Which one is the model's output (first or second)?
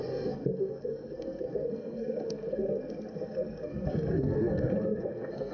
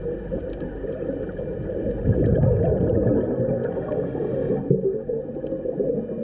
first